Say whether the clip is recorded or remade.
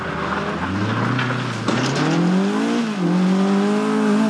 recorded